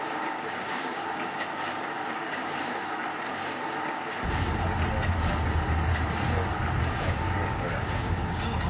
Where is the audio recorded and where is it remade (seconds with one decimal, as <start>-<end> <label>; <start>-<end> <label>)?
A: 0.0-3.1 remade; 3.1-6.8 recorded; 6.8-8.7 remade